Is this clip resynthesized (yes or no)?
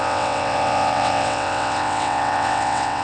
yes